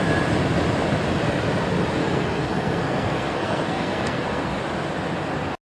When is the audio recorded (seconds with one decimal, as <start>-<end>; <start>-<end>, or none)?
0.0-2.0; 4.6-5.7